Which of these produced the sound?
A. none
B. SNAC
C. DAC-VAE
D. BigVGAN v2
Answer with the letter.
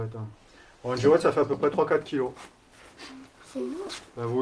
A